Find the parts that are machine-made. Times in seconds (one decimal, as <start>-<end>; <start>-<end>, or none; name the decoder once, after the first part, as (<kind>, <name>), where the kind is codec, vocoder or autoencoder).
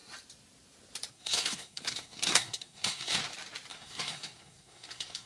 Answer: 1.1-3.2 (codec, SNAC); 3.7-5.3